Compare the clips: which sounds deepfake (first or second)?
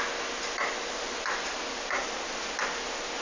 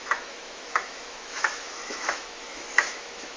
second